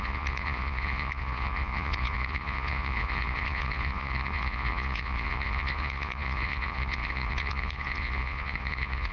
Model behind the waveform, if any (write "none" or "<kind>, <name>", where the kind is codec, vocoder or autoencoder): vocoder, Vocos